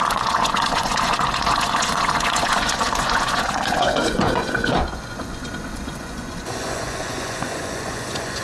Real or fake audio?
fake